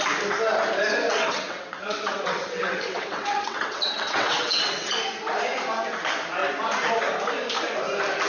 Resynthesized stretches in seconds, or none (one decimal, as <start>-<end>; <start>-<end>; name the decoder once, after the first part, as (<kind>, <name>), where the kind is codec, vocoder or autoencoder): 1.1-4.9 (vocoder, WaveNeXt)